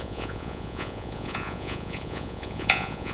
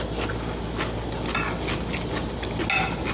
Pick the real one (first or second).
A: second